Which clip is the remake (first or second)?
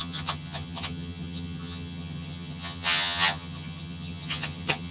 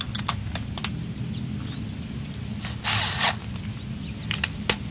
first